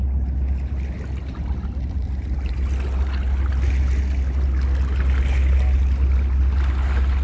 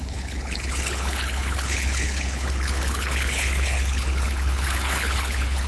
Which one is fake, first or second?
second